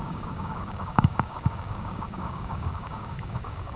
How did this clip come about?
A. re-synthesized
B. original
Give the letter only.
A